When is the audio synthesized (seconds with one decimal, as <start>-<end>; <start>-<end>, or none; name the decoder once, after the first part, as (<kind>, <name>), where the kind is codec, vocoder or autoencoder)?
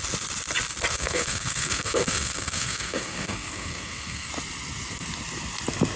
0.9-4.3 (codec, SNAC)